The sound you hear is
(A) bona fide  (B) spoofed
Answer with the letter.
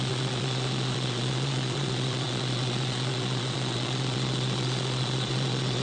B